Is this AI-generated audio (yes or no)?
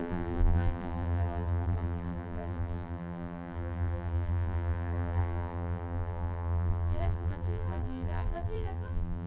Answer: yes